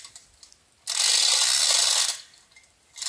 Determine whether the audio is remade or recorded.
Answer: recorded